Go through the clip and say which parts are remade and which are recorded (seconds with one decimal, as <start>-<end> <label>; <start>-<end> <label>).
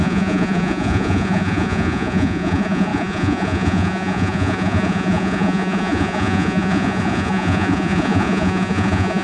0.0-9.2 remade